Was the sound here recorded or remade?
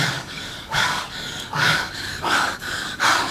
remade